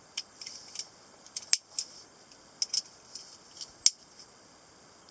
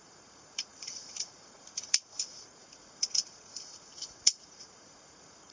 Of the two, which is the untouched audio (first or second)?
first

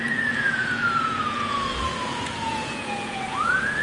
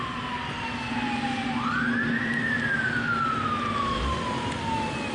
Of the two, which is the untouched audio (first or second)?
second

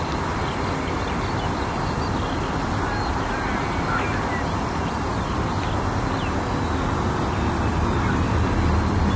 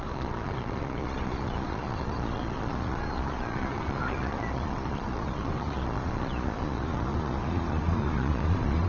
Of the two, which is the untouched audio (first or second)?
first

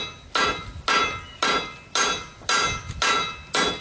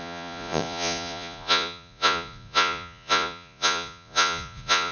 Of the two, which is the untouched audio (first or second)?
first